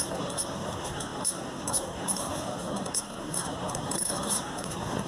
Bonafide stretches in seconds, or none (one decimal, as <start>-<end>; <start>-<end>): none